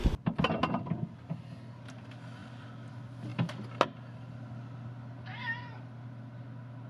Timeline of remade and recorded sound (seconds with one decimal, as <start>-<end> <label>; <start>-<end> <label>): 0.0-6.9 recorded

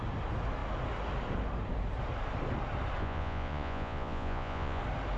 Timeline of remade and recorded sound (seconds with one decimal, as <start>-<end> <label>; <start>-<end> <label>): 0.0-3.0 recorded; 3.0-4.8 remade; 4.8-5.2 recorded

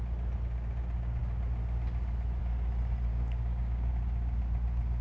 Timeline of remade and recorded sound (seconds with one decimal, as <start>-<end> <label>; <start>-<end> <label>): 0.0-3.1 recorded; 3.1-3.9 remade; 3.9-5.0 recorded